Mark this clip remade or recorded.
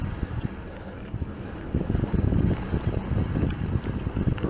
recorded